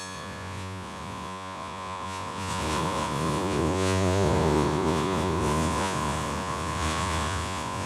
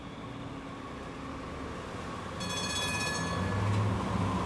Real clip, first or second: second